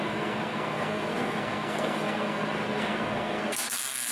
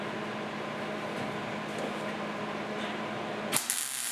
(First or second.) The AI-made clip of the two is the first